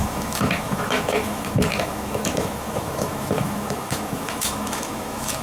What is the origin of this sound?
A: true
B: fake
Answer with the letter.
B